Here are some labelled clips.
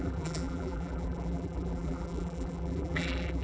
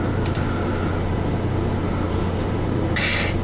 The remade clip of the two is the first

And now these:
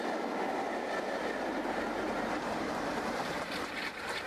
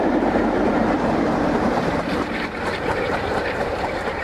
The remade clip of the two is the second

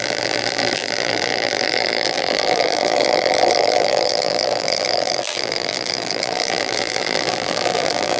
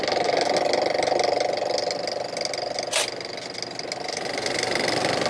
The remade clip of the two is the first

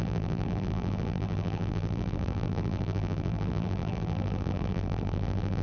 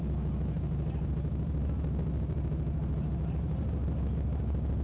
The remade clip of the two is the first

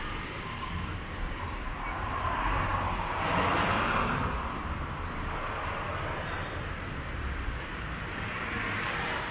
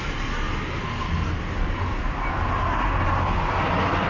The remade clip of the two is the first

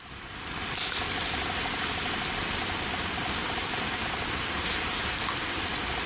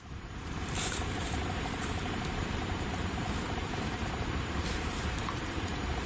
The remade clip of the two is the second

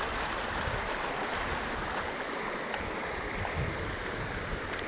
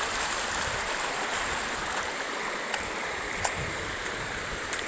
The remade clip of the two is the second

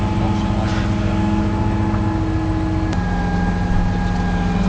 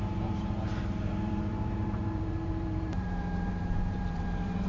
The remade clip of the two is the second